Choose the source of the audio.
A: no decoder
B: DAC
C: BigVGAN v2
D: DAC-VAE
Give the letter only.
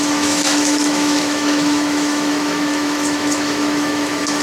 D